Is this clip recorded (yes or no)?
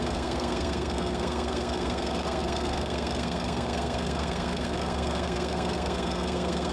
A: no